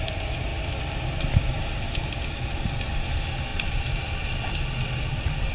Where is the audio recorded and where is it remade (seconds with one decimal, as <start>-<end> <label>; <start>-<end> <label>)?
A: 0.0-3.5 recorded; 3.5-4.1 remade; 4.1-5.5 recorded